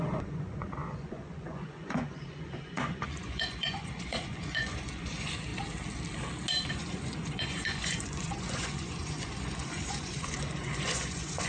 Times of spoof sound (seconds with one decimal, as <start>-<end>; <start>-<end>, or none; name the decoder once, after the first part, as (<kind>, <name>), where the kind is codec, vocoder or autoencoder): 0.0-5.5 (vocoder, Vocos); 6.7-11.5